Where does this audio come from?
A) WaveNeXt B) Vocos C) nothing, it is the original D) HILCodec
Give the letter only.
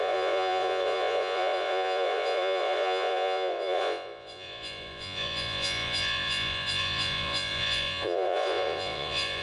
B